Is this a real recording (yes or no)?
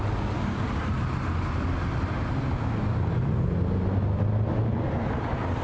yes